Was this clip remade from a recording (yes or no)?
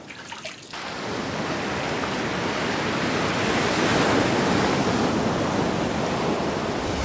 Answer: no